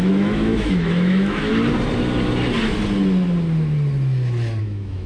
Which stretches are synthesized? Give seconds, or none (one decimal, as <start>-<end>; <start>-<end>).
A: 0.0-1.5; 4.6-5.1